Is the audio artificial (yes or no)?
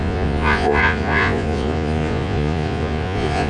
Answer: yes